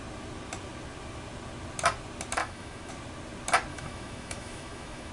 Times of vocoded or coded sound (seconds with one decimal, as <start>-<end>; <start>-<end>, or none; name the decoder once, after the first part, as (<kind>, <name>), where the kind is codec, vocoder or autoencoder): 2.4-2.9 (autoencoder, DAC-VAE); 3.7-5.1